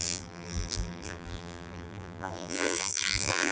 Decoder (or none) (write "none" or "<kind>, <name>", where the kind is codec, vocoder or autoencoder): vocoder, BigVGAN v2